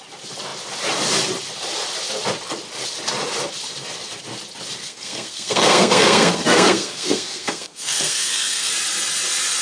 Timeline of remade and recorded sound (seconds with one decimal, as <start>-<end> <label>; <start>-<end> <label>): 0.0-4.8 recorded; 4.8-8.7 remade; 8.7-9.6 recorded